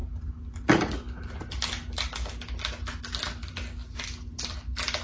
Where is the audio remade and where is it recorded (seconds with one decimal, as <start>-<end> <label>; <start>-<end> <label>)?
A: 0.0-5.0 recorded